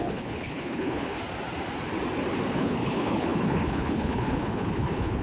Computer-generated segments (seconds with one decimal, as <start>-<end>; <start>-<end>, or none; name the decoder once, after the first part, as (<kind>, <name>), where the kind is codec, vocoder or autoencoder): 0.0-1.2 (codec, HILCodec); 2.5-5.2